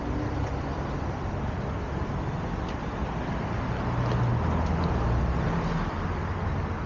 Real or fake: real